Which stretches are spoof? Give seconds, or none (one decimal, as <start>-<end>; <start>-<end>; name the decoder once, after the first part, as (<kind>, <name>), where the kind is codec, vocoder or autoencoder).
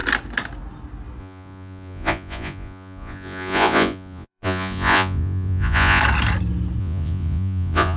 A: 1.2-6.0 (vocoder, Vocos); 6.8-8.0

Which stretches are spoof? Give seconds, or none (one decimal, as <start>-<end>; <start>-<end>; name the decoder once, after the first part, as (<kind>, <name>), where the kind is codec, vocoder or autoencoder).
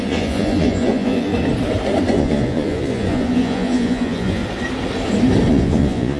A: 0.0-1.3 (vocoder, Vocos); 2.1-4.4; 5.5-6.2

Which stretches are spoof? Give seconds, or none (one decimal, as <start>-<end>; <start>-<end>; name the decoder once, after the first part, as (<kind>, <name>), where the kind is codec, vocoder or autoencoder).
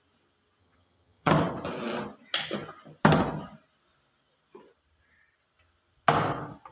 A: 0.6-1.3 (vocoder, HiFi-GAN)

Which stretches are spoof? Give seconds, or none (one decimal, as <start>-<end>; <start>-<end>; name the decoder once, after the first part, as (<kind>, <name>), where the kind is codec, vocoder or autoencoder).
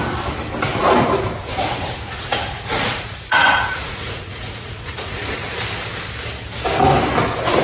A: 1.5-5.6 (vocoder, Vocos)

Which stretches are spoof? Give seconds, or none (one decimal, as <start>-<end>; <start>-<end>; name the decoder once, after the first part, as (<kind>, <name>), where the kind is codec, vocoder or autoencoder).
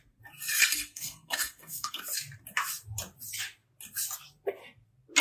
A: 0.6-2.0 (codec, SNAC)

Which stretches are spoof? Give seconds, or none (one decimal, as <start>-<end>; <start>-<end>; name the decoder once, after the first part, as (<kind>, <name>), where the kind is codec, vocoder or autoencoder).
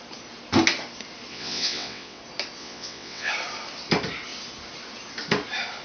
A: 1.3-2.2 (vocoder, WaveNeXt); 2.6-3.3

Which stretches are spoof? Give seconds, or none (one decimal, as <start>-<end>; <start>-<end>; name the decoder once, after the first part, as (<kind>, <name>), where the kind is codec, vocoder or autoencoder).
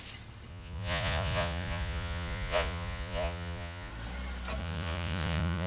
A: 0.5-3.9 (vocoder, Vocos); 4.6-5.7